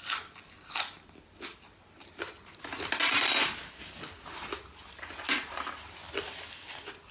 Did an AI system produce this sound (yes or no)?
no